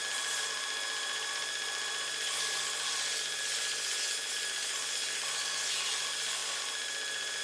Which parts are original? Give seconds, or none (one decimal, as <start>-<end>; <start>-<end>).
0.0-7.4